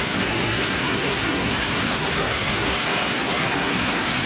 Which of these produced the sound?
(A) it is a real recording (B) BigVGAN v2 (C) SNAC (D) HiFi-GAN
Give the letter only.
C